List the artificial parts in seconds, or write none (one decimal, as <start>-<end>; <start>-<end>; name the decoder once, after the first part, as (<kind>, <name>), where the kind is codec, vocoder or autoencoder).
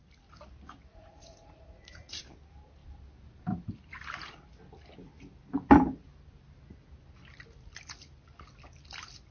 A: 0.9-2.2 (vocoder, Vocos)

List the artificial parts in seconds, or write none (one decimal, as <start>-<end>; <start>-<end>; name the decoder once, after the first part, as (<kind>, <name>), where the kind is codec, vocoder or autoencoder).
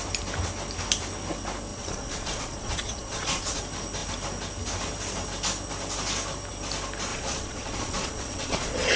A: 1.7-3.6 (vocoder, Vocos); 7.1-9.0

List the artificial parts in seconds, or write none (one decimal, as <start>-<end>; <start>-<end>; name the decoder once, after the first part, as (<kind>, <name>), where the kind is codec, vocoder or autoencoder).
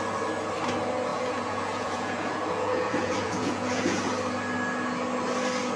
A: 1.1-4.1 (vocoder, Vocos)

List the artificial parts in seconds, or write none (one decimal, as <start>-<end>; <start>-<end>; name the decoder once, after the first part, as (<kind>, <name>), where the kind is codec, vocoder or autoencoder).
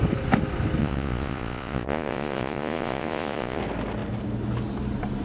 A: 0.8-3.6 (vocoder, Vocos)